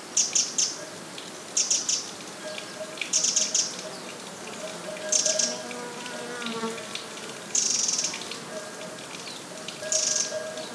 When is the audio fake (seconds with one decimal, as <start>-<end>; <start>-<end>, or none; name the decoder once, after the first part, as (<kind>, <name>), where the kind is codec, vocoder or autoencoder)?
none